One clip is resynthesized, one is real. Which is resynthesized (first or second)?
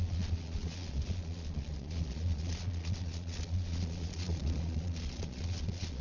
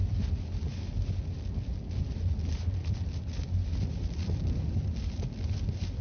first